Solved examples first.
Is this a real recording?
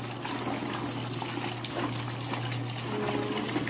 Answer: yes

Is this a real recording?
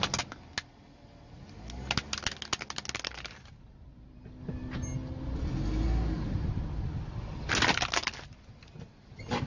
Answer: yes